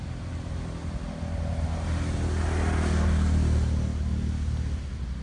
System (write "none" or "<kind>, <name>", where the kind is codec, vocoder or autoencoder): none